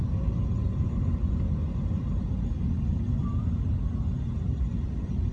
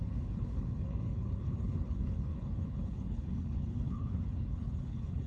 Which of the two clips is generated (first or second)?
second